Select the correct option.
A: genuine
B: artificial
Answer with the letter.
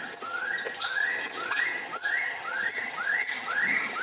B